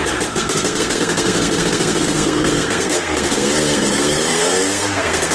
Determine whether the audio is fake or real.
fake